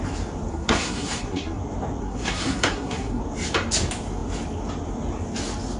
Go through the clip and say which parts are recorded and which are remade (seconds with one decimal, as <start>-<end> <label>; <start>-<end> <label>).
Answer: 0.0-0.5 recorded; 0.5-1.6 remade; 1.6-2.0 recorded; 2.0-3.2 remade; 3.2-5.8 recorded